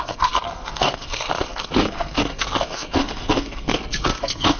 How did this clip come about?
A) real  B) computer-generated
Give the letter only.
B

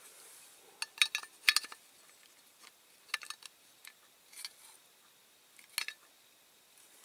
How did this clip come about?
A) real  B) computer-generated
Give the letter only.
A